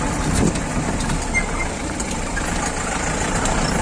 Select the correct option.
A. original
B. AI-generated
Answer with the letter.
A